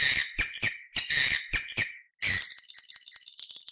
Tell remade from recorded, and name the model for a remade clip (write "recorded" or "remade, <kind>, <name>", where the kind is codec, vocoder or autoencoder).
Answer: recorded